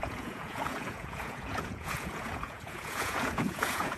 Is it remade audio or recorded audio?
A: remade